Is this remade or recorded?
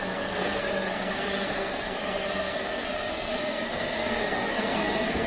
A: remade